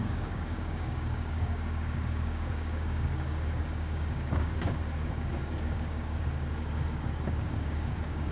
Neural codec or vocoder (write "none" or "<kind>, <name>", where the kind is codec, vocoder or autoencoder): codec, DAC